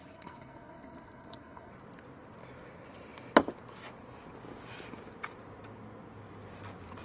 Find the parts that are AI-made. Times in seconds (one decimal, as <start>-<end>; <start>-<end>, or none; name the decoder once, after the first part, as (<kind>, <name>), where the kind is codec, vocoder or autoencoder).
0.0-1.7 (codec, SNAC)